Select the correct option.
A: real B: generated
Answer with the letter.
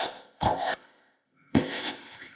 B